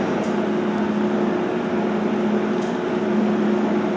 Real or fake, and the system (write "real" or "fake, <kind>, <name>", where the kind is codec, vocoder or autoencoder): real